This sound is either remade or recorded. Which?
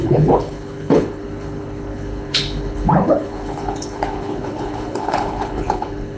remade